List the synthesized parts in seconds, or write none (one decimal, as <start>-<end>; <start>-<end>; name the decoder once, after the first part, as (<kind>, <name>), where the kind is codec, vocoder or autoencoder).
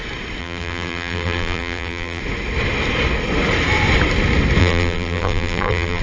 0.4-2.2 (vocoder, BigVGAN v2); 4.6-6.0